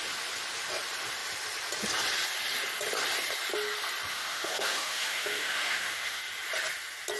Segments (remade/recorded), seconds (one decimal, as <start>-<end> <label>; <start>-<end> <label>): 0.0-4.1 recorded; 4.1-6.2 remade; 6.2-7.2 recorded